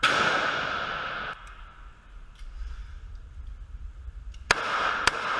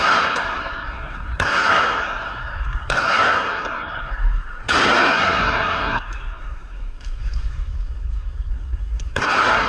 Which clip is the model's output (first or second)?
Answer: second